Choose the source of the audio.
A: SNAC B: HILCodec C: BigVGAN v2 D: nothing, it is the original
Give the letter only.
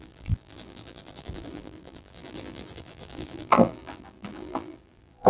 C